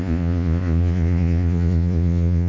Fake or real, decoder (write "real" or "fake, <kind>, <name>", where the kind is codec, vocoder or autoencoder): fake, vocoder, Vocos